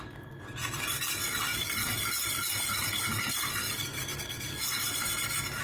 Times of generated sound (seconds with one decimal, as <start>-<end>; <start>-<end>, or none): 1.5-4.2